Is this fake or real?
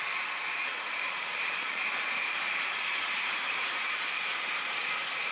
fake